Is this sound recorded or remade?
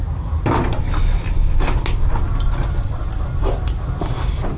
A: recorded